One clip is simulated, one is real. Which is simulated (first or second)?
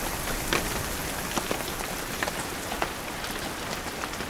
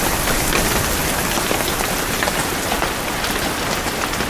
first